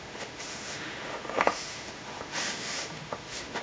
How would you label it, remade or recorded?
remade